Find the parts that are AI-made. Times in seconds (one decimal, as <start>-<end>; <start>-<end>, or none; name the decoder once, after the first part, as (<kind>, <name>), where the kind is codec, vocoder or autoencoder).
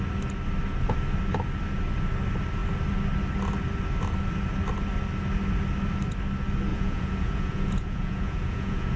6.7-9.0 (vocoder, Vocos)